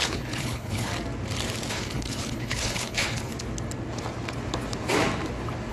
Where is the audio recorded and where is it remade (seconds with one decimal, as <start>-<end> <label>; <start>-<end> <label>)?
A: 0.0-0.9 remade; 0.9-1.7 recorded; 1.7-3.3 remade; 3.3-5.7 recorded

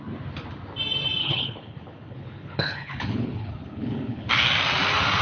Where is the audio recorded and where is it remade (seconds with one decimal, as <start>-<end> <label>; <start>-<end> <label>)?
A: 0.0-1.2 recorded; 1.2-4.3 remade; 4.3-5.2 recorded

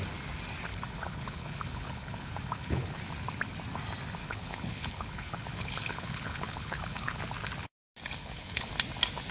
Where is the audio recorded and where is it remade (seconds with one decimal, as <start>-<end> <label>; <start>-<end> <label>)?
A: 0.0-0.7 recorded; 0.7-3.0 remade; 3.0-4.2 recorded; 4.2-7.2 remade; 7.2-8.2 recorded; 8.2-8.7 remade; 8.7-9.3 recorded

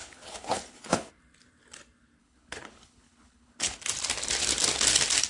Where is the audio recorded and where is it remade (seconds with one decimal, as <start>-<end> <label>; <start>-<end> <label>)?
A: 0.0-1.1 remade; 1.1-2.2 recorded; 2.2-3.8 remade; 3.8-5.3 recorded

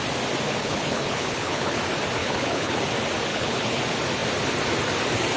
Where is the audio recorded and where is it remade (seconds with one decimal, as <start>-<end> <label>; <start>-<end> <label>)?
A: 0.0-0.6 recorded; 0.6-1.8 remade; 1.8-2.2 recorded; 2.2-2.8 remade; 2.8-3.3 recorded; 3.3-3.8 remade; 3.8-5.4 recorded